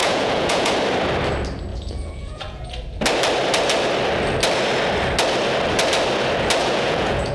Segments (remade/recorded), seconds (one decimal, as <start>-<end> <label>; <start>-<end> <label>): 0.0-0.7 remade; 0.7-1.7 recorded; 1.7-2.7 remade; 2.7-6.6 recorded; 6.6-7.3 remade

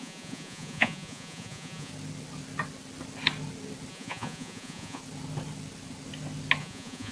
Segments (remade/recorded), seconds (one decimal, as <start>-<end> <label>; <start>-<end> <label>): 0.0-1.9 remade; 1.9-3.9 recorded; 3.9-5.0 remade; 5.0-6.6 recorded; 6.6-7.1 remade

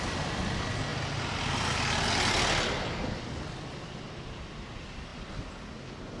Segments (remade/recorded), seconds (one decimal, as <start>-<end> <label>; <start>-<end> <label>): 0.0-6.2 recorded

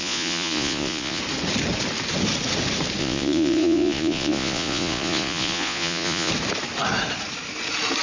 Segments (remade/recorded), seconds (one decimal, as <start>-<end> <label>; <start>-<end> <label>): 0.0-1.2 remade; 1.2-3.0 recorded; 3.0-6.3 remade; 6.3-8.0 recorded

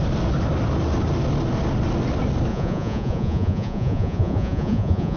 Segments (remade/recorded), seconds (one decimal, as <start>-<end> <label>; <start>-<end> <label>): 0.0-2.5 recorded; 2.5-5.2 remade

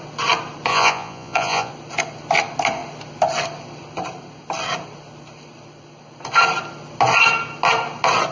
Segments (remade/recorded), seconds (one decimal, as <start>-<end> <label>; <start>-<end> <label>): 0.0-0.7 recorded; 0.7-1.7 remade; 1.7-8.3 recorded

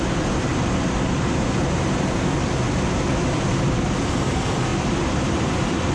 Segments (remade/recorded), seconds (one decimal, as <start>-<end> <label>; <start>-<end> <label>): 0.0-5.9 recorded

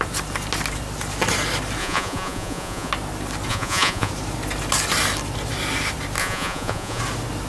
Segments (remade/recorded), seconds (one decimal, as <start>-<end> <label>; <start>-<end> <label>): 0.0-1.8 recorded; 1.8-2.9 remade; 2.9-3.5 recorded; 3.5-4.1 remade; 4.1-6.2 recorded; 6.2-7.0 remade; 7.0-7.5 recorded